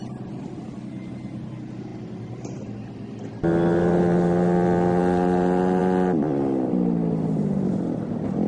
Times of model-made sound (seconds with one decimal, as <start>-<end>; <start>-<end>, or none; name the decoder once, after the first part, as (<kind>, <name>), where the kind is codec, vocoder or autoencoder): none